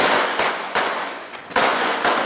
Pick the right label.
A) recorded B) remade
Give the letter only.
B